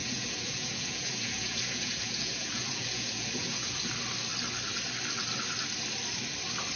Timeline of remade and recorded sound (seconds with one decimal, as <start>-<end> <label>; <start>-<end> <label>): 0.0-3.9 remade; 3.9-6.8 recorded